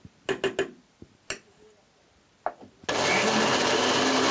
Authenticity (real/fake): real